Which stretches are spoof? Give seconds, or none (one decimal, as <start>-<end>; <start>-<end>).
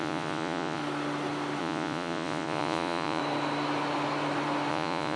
0.0-0.8; 1.6-3.2; 4.7-5.2